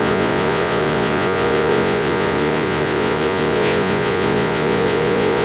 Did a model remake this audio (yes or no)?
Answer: yes